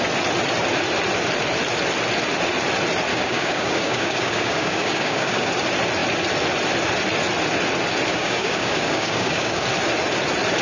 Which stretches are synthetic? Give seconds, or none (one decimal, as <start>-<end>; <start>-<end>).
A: 3.1-5.5; 8.1-9.6